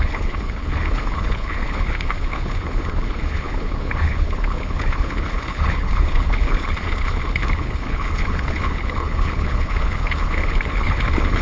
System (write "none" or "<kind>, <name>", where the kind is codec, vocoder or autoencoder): codec, HILCodec